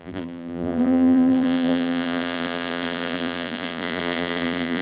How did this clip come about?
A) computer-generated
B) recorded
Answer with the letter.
A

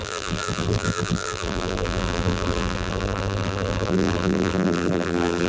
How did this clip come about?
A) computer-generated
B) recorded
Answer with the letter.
A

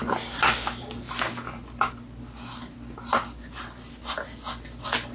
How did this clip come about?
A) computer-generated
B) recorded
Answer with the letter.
B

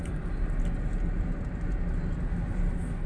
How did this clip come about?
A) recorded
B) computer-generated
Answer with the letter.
A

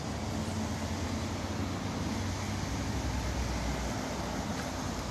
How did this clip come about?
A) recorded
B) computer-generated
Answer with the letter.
A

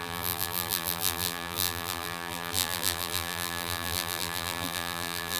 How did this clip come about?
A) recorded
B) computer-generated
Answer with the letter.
B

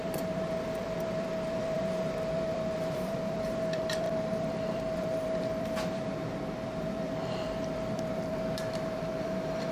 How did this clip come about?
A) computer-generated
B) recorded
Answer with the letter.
A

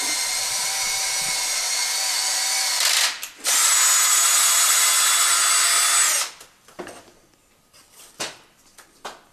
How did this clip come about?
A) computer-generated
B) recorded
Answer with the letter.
B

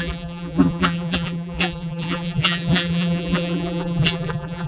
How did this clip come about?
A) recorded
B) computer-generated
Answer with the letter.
B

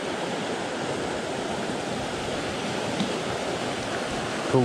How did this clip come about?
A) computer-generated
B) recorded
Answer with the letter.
A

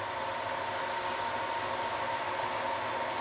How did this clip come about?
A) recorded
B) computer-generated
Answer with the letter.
A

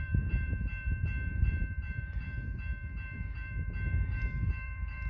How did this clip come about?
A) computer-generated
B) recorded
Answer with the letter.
A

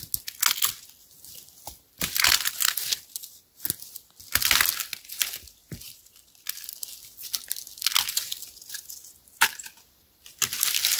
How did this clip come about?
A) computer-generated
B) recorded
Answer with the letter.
B